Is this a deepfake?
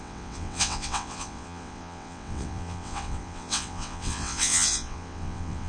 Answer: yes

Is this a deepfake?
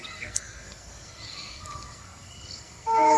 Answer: yes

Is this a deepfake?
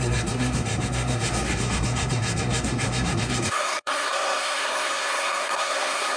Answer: yes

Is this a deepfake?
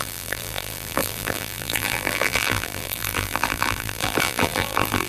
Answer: yes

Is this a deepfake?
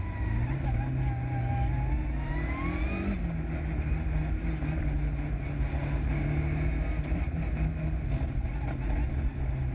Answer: no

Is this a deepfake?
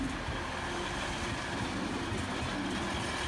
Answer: no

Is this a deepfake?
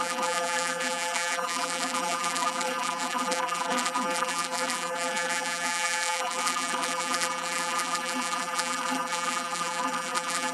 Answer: yes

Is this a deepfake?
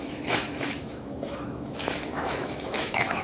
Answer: yes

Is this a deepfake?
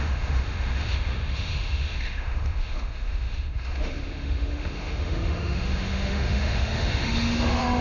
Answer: yes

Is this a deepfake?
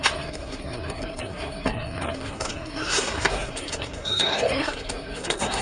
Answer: yes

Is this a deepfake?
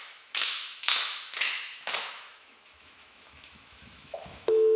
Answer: yes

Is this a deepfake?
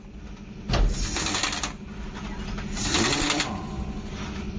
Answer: no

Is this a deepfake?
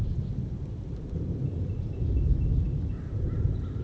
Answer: no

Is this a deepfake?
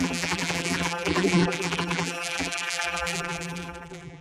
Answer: yes